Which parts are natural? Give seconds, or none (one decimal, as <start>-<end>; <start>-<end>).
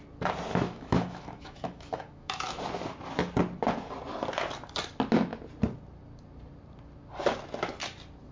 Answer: 0.0-0.5; 2.6-8.3